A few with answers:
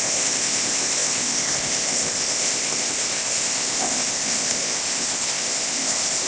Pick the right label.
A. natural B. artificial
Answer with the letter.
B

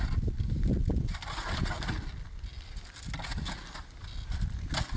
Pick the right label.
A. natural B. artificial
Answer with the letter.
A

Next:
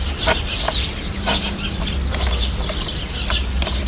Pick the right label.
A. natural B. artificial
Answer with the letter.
A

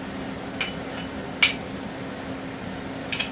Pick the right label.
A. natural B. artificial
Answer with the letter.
A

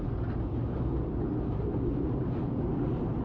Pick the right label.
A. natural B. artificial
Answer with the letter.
A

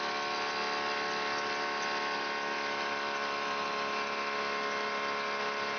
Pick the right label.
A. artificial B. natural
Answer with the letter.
B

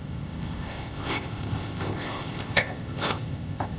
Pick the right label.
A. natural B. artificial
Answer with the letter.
B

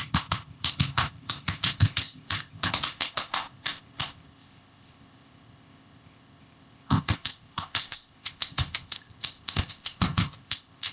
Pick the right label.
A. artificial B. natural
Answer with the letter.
A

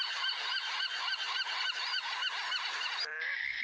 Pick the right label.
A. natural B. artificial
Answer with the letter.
A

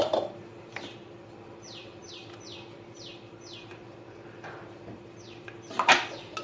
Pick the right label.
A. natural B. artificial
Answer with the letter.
A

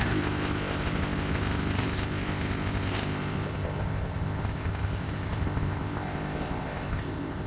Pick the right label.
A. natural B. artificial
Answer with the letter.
B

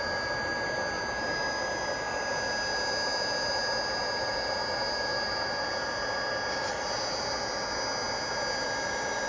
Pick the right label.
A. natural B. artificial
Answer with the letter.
A